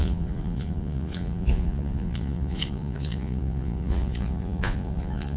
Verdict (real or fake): fake